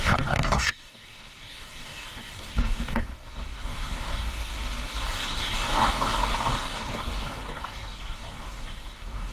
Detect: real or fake fake